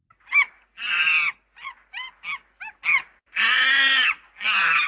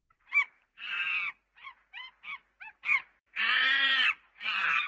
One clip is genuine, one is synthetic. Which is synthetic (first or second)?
second